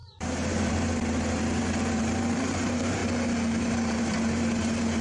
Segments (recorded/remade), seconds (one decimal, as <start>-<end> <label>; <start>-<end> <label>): 0.0-3.0 remade; 3.0-3.6 recorded; 3.6-5.0 remade